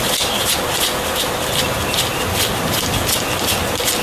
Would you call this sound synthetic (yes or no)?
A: no